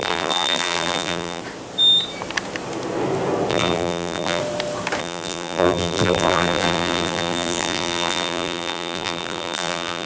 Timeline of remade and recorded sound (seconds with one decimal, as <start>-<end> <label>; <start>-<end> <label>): 0.0-1.4 remade; 1.4-3.5 recorded; 3.5-4.4 remade; 4.4-5.0 recorded; 5.0-10.1 remade

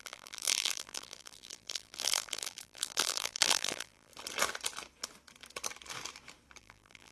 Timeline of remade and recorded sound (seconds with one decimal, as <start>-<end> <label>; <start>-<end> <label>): 0.0-4.1 remade; 4.1-6.6 recorded; 6.6-7.1 remade

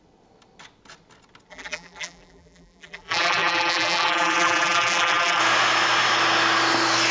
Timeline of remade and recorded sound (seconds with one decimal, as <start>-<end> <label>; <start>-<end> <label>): 0.0-1.5 recorded; 1.5-5.4 remade; 5.4-7.1 recorded